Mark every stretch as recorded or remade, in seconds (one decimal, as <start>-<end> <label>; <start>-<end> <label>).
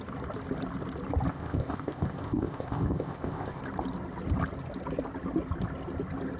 0.0-1.3 recorded; 1.3-3.6 remade; 3.6-6.4 recorded